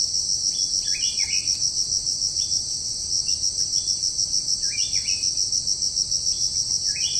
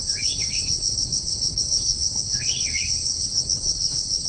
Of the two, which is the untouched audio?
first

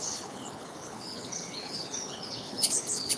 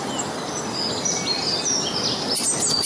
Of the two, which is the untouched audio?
second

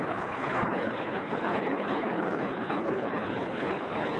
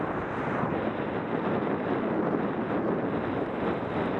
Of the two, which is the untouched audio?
second